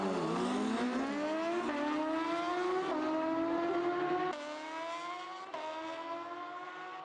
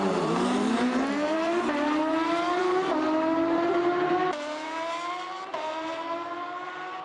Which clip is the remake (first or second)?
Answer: second